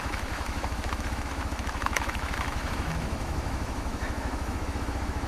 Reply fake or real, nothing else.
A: fake